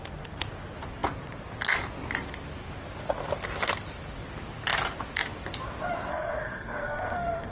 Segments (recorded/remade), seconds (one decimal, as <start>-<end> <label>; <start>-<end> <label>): 0.0-6.1 recorded; 6.1-7.5 remade